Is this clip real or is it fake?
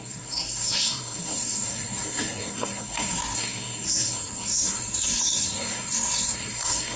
fake